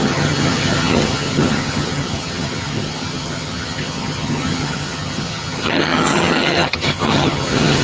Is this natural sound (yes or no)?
no